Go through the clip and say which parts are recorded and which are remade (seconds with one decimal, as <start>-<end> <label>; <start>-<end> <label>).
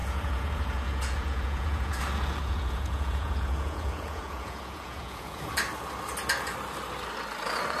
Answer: 0.0-2.0 remade; 2.0-2.4 recorded; 2.4-5.4 remade; 5.4-7.8 recorded